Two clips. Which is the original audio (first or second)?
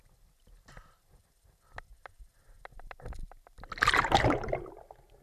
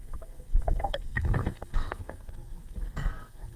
first